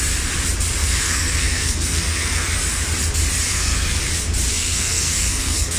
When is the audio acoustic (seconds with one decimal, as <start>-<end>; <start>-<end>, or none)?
0.0-0.8; 2.6-3.5; 4.0-4.5